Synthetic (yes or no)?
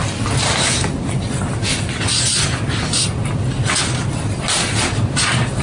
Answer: no